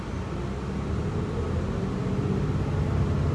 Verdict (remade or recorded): recorded